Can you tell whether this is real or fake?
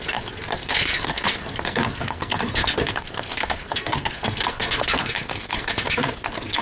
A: fake